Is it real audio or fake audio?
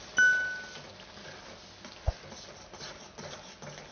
real